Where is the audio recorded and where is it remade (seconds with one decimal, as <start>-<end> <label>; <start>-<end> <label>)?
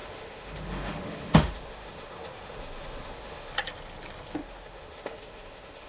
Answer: 0.0-3.5 remade; 3.5-4.4 recorded; 4.4-5.9 remade